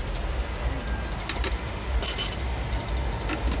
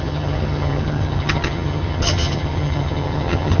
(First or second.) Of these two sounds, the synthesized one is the second